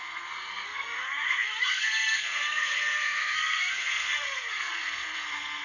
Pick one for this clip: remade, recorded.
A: remade